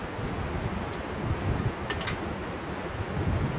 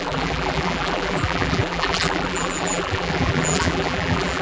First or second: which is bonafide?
first